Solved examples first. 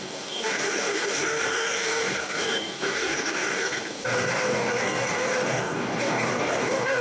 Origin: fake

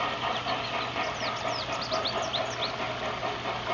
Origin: real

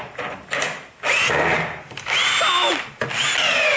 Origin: real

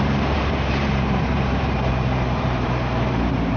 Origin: fake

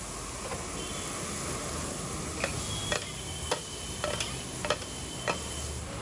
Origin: real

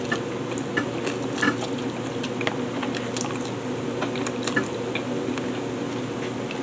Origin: real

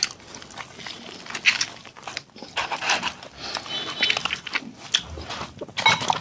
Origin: real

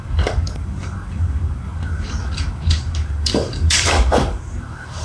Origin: fake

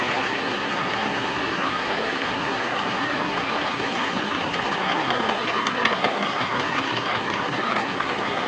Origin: fake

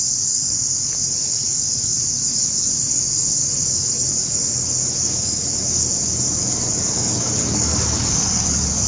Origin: fake